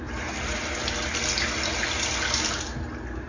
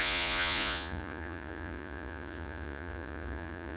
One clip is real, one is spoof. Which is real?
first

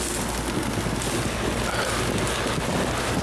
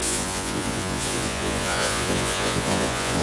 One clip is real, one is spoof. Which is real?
first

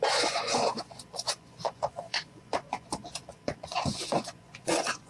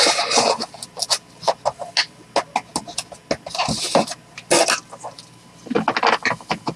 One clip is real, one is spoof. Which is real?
second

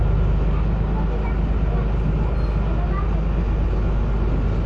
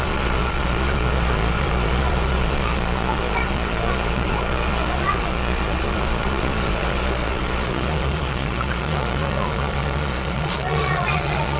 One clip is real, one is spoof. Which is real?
first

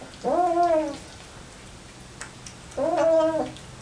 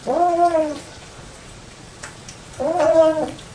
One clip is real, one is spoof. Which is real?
first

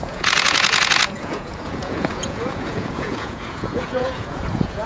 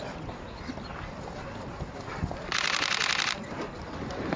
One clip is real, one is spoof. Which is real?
second